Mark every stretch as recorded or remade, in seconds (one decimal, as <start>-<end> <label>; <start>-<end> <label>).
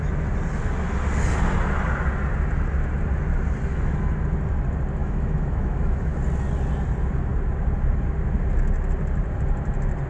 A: 0.0-3.7 recorded; 3.7-4.2 remade; 4.2-5.0 recorded; 5.0-6.2 remade; 6.2-10.1 recorded